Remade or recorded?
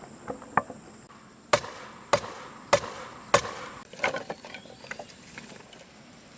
recorded